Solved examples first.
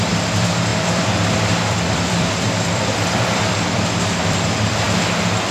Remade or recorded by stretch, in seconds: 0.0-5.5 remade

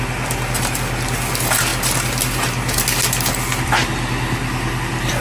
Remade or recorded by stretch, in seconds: 0.0-5.2 recorded

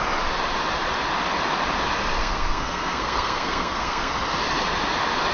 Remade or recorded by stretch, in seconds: 0.0-2.2 recorded; 2.2-4.1 remade; 4.1-5.3 recorded

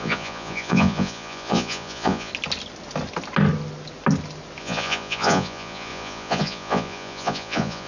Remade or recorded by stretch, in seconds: 0.0-2.3 remade; 2.3-4.6 recorded; 4.6-7.9 remade

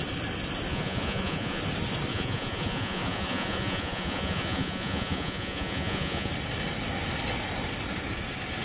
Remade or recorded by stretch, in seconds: 0.0-0.7 recorded; 0.7-1.6 remade; 1.6-2.1 recorded; 2.1-6.3 remade; 6.3-8.6 recorded

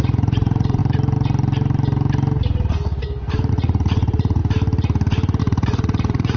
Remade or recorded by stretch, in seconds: 0.0-0.8 remade; 0.8-3.5 recorded; 3.5-4.4 remade; 4.4-5.4 recorded; 5.4-6.4 remade

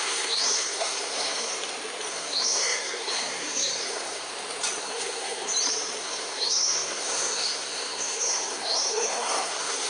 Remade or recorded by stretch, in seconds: 0.0-1.5 remade; 1.5-2.1 recorded; 2.1-4.3 remade; 4.3-4.8 recorded; 4.8-5.5 remade; 5.5-6.0 recorded; 6.0-9.9 remade